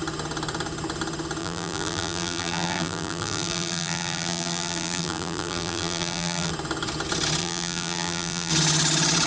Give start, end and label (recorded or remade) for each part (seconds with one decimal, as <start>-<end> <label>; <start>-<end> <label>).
0.0-1.4 recorded; 1.4-6.5 remade; 6.5-7.4 recorded; 7.4-8.5 remade; 8.5-9.3 recorded